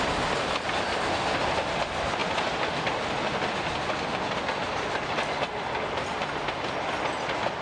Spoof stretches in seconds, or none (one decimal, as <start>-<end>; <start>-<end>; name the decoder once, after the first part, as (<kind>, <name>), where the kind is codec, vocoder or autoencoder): none